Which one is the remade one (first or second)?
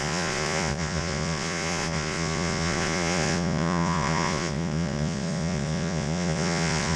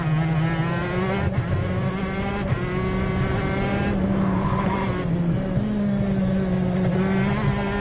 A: first